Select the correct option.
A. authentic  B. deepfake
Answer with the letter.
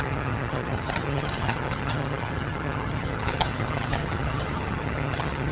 B